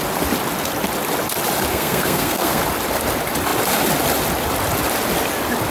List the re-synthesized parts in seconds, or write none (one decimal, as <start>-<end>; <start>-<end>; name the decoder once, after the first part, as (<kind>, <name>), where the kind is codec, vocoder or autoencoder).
1.7-2.6 (codec, SNAC)